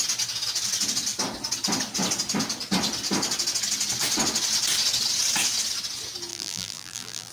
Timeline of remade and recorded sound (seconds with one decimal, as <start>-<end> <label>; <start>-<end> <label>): 0.0-6.3 recorded; 6.3-7.3 remade